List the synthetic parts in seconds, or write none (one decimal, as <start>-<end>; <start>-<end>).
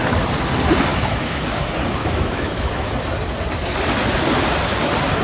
0.9-1.4; 2.0-2.9